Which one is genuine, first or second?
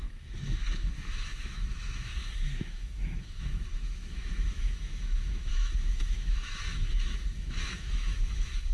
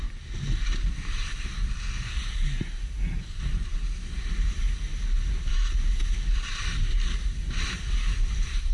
second